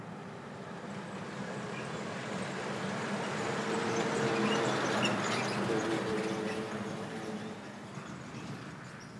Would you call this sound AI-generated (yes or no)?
no